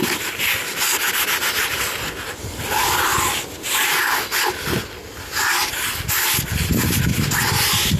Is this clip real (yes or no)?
yes